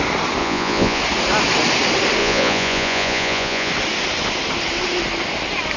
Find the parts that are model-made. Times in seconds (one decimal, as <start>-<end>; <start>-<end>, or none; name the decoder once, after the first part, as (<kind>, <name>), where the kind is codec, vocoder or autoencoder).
0.4-1.0 (vocoder, Vocos); 2.2-3.7